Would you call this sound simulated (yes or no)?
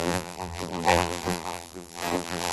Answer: yes